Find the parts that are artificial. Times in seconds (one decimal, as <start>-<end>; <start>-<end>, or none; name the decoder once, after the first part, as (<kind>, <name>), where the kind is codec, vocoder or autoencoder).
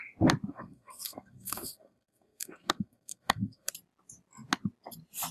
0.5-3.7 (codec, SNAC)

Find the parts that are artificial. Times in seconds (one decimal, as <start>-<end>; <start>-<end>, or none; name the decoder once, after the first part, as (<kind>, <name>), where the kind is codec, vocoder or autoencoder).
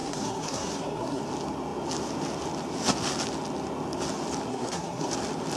0.0-1.2 (codec, SNAC); 4.5-5.1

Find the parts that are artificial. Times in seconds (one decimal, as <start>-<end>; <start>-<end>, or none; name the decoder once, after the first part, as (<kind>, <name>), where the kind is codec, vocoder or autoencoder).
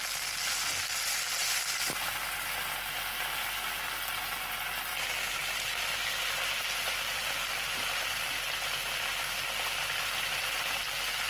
1.4-3.8 (vocoder, BigVGAN v2)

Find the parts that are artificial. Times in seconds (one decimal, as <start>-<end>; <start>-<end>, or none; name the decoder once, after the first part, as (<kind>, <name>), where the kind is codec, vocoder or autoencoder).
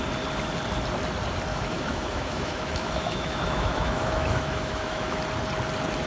1.5-5.2 (autoencoder, DAC-VAE)